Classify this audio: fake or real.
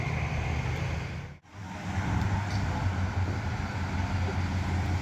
real